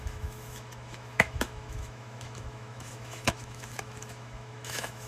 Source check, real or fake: fake